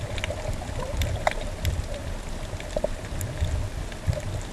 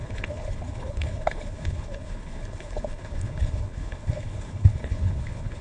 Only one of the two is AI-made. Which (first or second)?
second